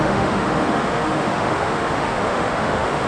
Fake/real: fake